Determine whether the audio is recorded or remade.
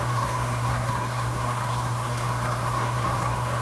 remade